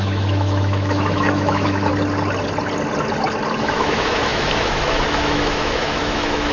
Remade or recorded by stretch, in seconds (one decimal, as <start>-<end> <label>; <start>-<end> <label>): 0.0-1.9 remade; 1.9-3.6 recorded; 3.6-6.5 remade